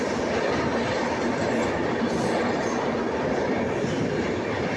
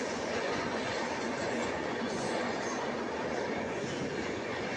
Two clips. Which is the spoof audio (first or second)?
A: second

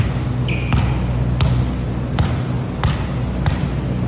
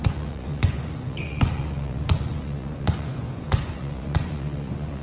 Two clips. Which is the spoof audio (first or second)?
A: second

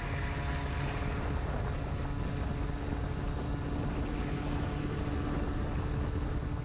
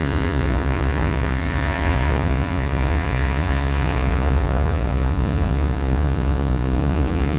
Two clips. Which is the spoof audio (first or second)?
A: second